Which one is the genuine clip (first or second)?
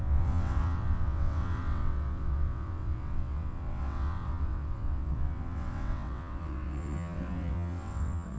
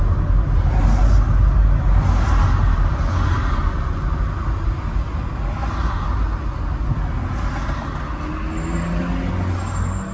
second